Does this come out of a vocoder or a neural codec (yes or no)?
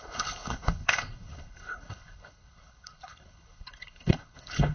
yes